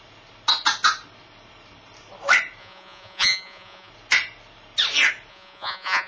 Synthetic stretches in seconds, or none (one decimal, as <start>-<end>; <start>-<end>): 2.6-3.9; 5.3-6.1